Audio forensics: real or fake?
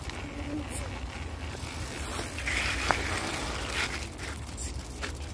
real